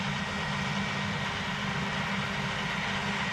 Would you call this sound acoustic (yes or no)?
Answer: yes